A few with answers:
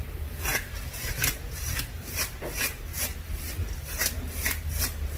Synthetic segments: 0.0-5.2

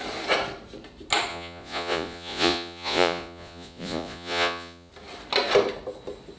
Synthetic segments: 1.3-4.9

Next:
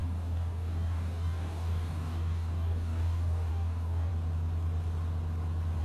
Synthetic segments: 0.0-4.1

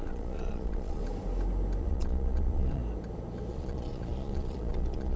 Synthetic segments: 0.0-1.0; 1.8-2.8; 3.5-5.2

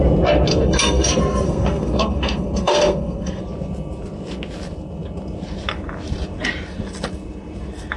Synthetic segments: 0.5-3.4